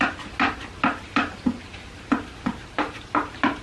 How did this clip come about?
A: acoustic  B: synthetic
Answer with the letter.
A